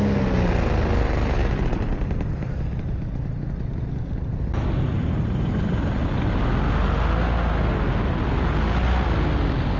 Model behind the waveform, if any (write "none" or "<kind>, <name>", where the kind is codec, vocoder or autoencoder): none